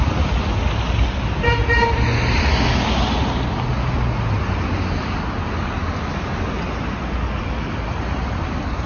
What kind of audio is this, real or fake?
real